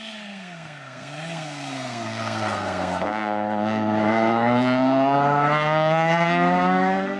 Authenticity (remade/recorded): remade